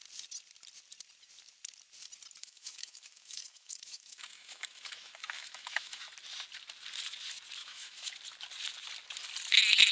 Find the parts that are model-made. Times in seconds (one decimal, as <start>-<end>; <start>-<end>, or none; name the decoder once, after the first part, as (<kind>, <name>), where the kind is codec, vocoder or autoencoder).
2.4-6.1 (autoencoder, DAC-VAE); 7.6-8.1